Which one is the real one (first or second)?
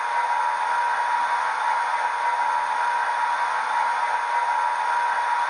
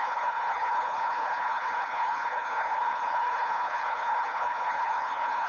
first